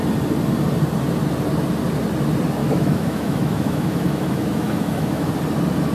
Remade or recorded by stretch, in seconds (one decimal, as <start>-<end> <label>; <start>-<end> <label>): 0.0-2.6 recorded; 2.6-5.3 remade; 5.3-5.9 recorded